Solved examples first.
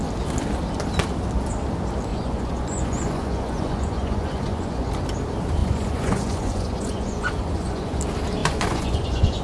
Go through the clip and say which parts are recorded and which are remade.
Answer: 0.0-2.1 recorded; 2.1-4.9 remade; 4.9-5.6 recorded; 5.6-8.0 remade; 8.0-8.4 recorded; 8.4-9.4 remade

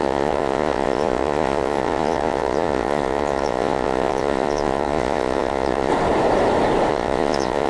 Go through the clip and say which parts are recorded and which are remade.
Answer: 0.0-5.9 remade; 5.9-6.9 recorded; 6.9-7.7 remade